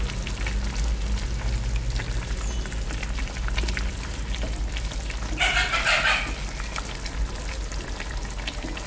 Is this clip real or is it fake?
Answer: real